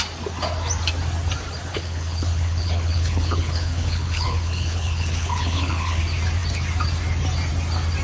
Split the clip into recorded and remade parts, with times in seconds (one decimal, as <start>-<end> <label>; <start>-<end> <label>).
0.0-1.7 recorded; 1.7-6.0 remade; 6.0-8.0 recorded